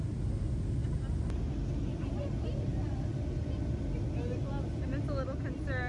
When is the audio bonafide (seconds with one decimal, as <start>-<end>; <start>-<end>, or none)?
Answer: 0.0-5.9